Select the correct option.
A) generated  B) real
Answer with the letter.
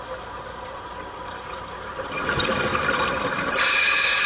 B